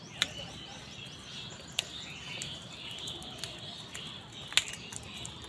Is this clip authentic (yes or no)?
yes